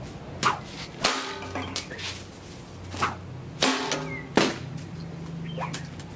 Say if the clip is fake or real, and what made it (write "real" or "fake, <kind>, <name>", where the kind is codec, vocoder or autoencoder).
real